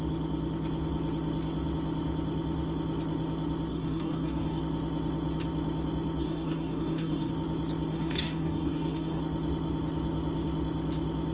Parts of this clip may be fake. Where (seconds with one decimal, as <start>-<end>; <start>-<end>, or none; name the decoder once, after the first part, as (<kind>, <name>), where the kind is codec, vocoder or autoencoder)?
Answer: 3.7-4.6 (codec, DAC); 6.2-7.3; 7.9-9.2